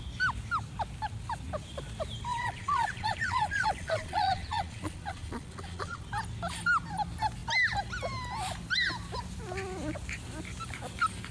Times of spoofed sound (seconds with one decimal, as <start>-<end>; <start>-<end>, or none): 2.3-6.0